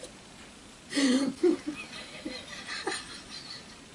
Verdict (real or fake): real